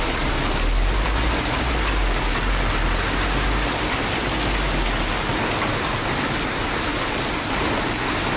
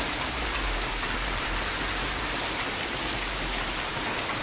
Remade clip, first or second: second